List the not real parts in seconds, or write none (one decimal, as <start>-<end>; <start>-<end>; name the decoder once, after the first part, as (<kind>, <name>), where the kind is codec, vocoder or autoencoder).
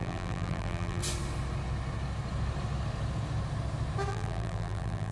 0.0-1.0 (vocoder, BigVGAN v2); 4.1-5.1